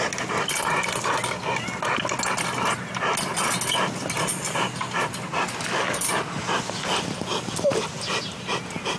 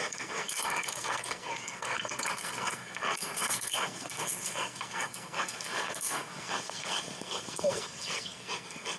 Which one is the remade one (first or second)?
second